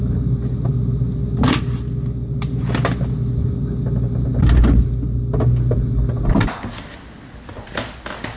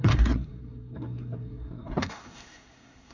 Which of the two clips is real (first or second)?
first